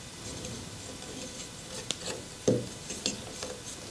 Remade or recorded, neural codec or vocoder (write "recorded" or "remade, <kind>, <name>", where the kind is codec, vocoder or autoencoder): recorded